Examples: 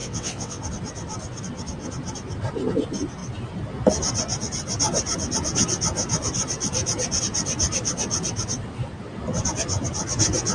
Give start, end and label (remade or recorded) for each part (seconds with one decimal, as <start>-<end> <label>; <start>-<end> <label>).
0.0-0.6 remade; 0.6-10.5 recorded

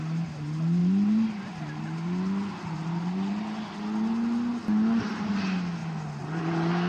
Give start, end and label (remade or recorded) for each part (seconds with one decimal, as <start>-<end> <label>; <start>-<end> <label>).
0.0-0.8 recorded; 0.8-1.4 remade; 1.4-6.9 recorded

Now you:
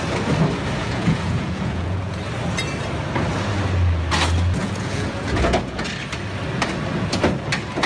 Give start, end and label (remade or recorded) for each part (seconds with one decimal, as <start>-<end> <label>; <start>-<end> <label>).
0.0-0.8 recorded; 0.8-2.2 remade; 2.2-4.6 recorded; 4.6-5.8 remade; 5.8-7.9 recorded